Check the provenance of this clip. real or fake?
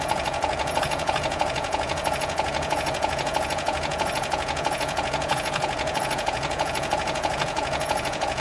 fake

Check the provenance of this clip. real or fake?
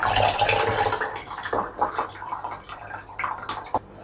real